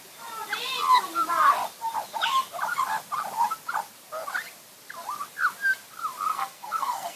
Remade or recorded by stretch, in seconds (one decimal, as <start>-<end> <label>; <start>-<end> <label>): 0.0-6.3 recorded; 6.3-7.2 remade